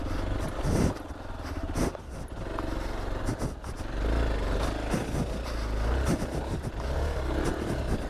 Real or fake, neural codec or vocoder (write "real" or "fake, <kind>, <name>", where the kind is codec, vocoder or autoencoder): real